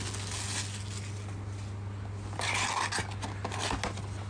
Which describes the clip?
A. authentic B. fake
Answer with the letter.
A